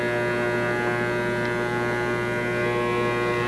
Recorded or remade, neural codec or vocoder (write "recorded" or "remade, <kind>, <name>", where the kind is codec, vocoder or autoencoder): recorded